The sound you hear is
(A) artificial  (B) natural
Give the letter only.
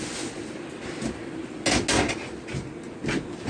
B